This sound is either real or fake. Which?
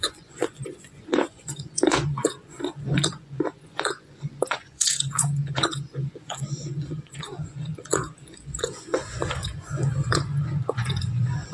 fake